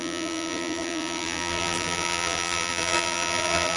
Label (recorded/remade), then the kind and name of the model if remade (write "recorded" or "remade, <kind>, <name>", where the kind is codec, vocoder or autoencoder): remade, vocoder, BigVGAN v2